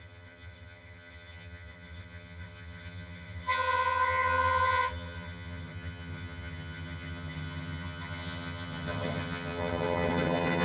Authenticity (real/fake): fake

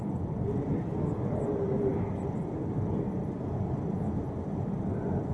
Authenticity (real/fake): real